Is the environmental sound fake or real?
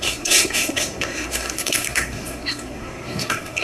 fake